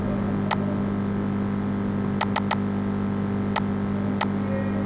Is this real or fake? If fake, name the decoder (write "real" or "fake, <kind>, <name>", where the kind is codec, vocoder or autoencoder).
real